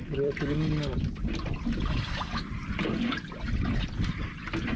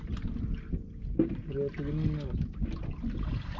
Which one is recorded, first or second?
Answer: second